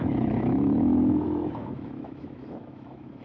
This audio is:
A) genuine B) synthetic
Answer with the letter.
B